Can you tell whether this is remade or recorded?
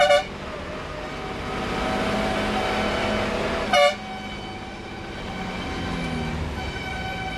recorded